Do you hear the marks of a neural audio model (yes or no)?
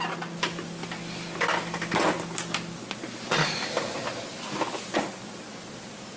no